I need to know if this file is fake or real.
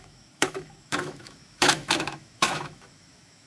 fake